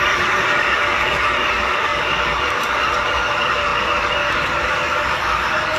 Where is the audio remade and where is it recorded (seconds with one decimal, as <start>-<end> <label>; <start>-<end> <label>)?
0.0-5.8 remade